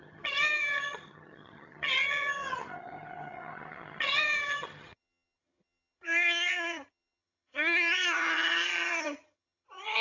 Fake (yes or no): yes